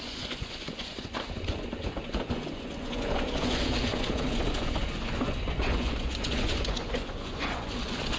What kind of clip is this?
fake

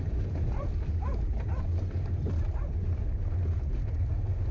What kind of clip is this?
real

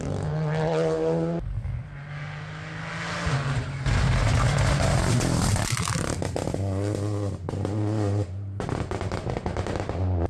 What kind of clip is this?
real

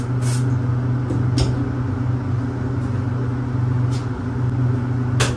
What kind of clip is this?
real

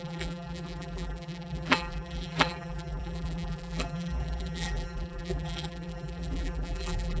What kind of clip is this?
fake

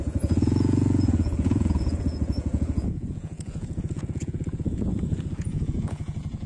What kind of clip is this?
fake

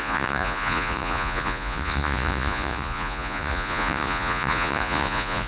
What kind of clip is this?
fake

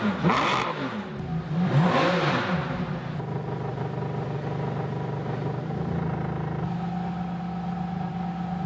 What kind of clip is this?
real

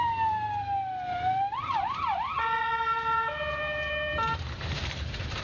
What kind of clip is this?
fake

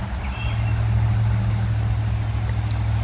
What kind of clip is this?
real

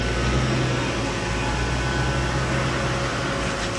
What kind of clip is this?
real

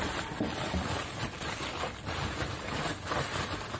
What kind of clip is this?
real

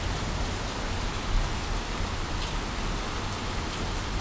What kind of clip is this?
real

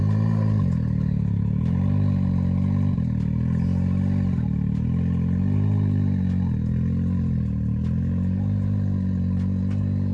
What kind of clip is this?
real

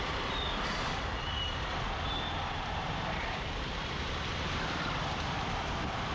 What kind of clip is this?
fake